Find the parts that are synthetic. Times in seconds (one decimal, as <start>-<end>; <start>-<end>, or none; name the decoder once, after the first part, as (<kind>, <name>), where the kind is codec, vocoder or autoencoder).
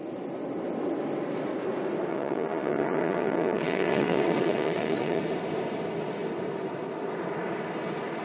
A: 2.1-5.2 (vocoder, Vocos)